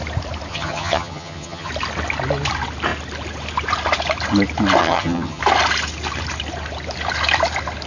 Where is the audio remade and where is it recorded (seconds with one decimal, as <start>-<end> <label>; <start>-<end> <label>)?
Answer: 0.0-0.5 recorded; 0.5-1.7 remade; 1.7-4.8 recorded; 4.8-5.4 remade; 5.4-7.9 recorded